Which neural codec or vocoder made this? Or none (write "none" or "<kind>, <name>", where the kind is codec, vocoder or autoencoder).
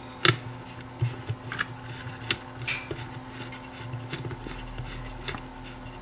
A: none